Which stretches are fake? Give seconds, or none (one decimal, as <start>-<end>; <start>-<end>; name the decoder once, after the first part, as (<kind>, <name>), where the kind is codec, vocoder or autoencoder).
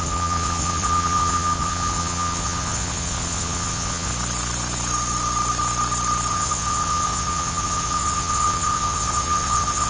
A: 0.0-4.1 (vocoder, Vocos); 6.3-9.9